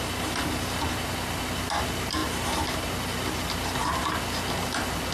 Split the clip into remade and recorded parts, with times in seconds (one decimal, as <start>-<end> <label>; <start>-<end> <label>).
0.0-5.1 recorded